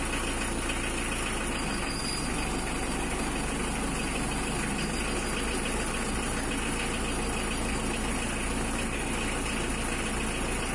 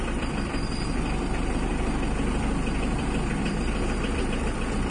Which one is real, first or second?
first